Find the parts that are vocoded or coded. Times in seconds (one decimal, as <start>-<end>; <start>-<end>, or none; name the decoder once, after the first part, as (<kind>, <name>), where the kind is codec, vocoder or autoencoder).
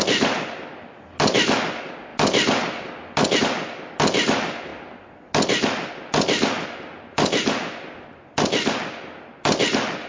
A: none